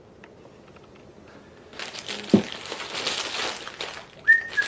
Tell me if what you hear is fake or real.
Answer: real